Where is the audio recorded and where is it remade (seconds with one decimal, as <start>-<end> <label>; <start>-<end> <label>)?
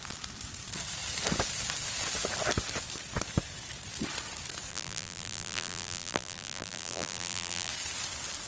0.0-4.7 recorded; 4.7-7.7 remade; 7.7-8.5 recorded